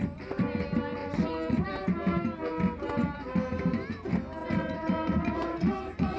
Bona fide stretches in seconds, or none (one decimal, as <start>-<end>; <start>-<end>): 0.0-1.0; 1.7-4.4